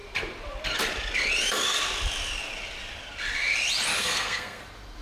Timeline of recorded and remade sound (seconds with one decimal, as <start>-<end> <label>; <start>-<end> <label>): 0.0-4.0 recorded; 4.0-4.6 remade; 4.6-5.0 recorded